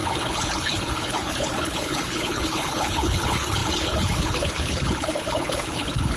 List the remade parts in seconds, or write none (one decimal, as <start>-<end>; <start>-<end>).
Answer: 0.0-6.2